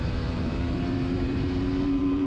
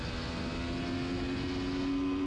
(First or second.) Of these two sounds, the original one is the second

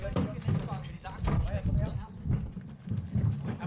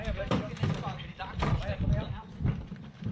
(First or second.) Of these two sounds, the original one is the first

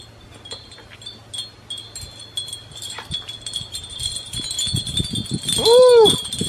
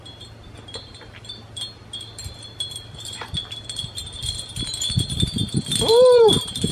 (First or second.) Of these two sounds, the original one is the first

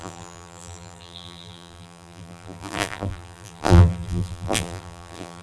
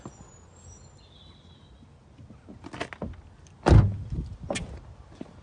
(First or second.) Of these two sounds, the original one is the second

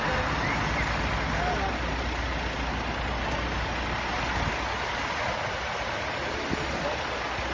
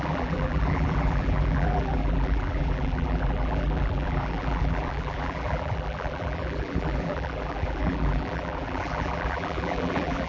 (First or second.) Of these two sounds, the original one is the first